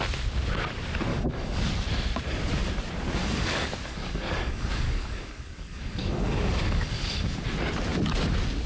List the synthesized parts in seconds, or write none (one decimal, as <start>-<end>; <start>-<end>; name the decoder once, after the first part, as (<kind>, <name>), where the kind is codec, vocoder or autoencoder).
1.1-1.6 (codec, DAC); 3.2-7.4